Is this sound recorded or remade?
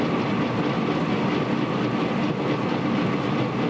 recorded